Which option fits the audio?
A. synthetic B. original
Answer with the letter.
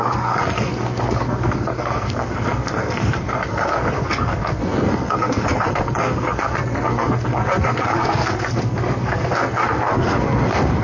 A